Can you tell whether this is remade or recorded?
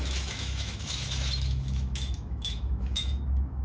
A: remade